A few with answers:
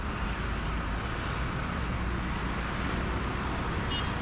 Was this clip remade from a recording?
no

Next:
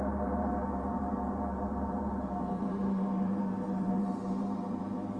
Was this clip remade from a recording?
yes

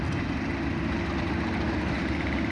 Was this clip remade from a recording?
no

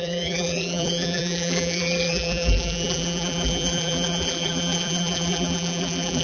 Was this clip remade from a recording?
yes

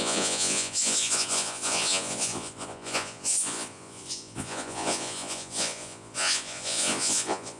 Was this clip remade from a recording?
yes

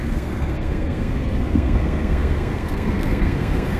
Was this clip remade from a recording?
yes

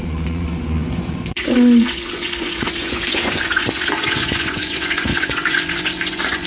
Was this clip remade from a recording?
yes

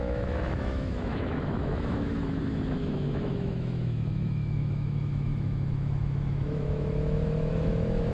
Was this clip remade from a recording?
yes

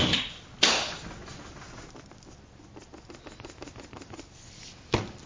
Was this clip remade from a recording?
no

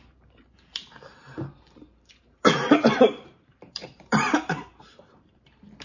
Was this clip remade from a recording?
yes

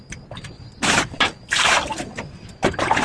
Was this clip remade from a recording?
no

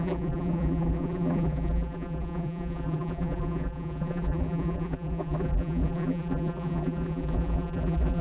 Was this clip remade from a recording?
yes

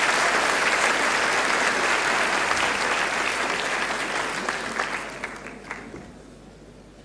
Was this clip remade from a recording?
no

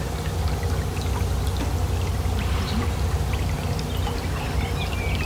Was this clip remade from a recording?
no